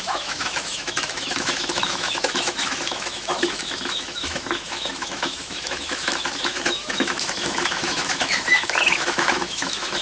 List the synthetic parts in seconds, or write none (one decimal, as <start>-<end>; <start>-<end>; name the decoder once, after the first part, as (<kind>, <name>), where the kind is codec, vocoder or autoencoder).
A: 0.0-10.0 (autoencoder, DAC-VAE)